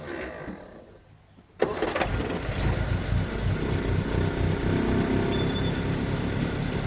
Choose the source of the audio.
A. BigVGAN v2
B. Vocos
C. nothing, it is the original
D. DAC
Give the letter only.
C